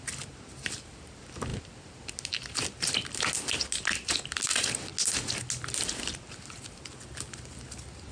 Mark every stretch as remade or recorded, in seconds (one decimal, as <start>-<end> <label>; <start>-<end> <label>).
0.0-8.1 recorded